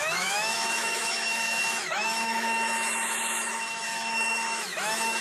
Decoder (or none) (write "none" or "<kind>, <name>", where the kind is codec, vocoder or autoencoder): autoencoder, DAC-VAE